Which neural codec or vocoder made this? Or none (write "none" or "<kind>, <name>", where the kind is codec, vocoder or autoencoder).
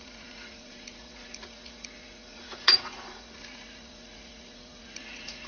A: vocoder, Vocos